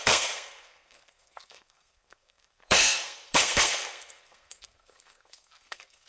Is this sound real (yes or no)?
no